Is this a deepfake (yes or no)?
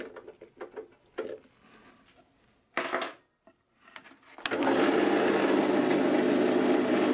no